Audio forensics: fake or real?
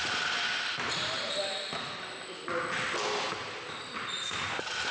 real